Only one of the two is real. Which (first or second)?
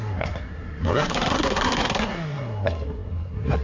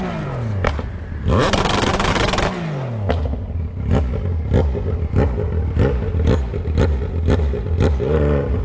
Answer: second